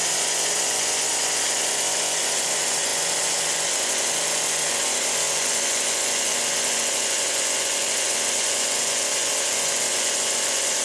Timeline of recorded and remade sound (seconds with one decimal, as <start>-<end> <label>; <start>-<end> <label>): 0.0-10.8 remade